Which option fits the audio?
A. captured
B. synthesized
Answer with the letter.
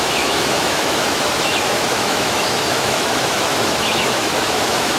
B